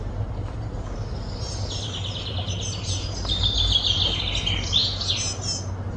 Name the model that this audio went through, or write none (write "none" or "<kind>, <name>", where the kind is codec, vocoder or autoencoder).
none